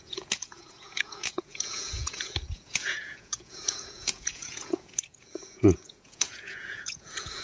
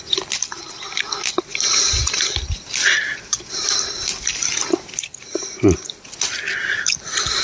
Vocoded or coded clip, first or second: first